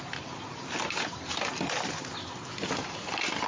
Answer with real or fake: real